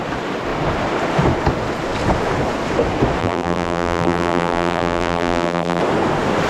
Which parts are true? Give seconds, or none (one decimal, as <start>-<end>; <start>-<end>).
0.0-3.2; 5.8-6.5

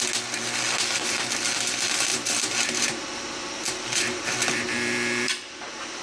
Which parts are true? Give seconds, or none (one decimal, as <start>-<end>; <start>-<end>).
0.0-2.1

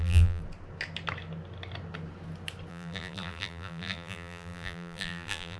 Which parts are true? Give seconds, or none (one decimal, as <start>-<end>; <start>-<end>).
0.4-2.7

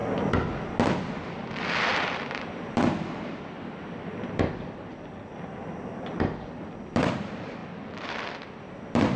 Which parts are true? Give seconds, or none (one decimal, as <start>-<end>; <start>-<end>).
0.0-1.0

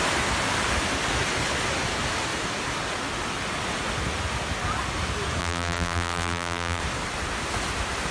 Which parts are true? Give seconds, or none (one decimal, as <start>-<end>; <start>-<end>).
0.0-5.4; 6.8-8.1